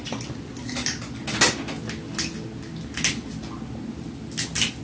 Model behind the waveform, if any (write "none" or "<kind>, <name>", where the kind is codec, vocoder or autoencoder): none